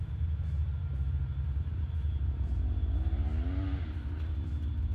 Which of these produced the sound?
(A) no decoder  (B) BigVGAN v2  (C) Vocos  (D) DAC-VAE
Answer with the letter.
A